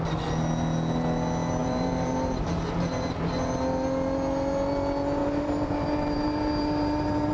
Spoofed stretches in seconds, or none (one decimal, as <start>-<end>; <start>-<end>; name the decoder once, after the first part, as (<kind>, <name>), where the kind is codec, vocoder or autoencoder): 1.6-2.5 (vocoder, BigVGAN v2); 5.2-7.3